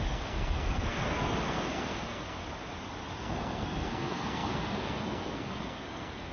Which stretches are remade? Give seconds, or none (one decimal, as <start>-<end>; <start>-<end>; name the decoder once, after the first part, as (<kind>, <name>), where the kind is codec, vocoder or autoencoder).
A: 0.0-2.4 (codec, SNAC); 3.2-6.3